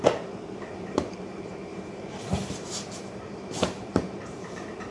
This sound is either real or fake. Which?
fake